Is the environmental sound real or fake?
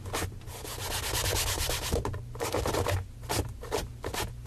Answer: real